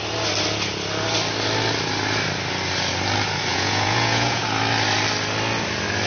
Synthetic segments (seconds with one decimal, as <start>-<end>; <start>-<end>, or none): 3.5-4.4